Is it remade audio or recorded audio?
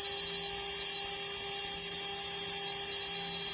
recorded